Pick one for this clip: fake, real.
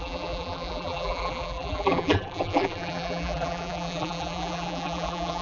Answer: fake